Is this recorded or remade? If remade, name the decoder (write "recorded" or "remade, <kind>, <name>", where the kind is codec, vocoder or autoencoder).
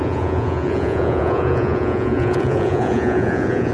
remade, vocoder, Vocos